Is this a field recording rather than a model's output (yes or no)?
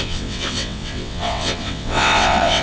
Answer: no